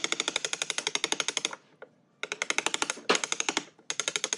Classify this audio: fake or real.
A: real